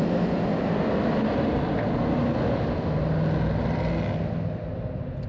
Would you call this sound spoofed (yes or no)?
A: no